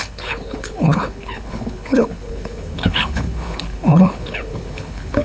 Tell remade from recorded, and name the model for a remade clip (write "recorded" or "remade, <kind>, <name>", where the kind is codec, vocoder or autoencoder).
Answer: remade, codec, HILCodec